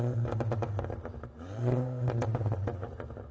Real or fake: fake